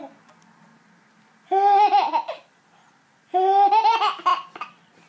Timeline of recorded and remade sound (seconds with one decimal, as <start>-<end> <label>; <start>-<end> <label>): 0.0-5.1 recorded